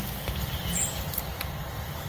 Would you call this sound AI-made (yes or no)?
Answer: no